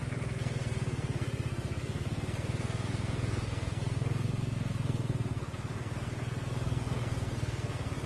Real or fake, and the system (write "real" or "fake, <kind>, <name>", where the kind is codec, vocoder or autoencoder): fake, codec, SNAC